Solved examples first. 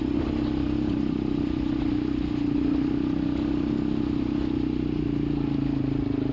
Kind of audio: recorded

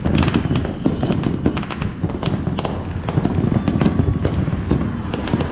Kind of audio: recorded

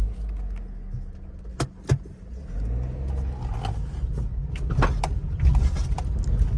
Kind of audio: recorded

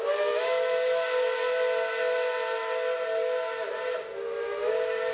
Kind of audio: recorded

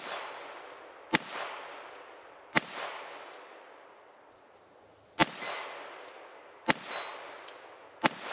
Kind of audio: recorded